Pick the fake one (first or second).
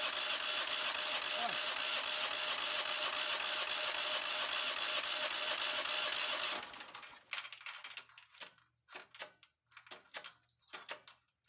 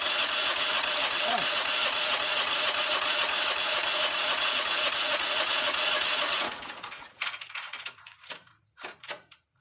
second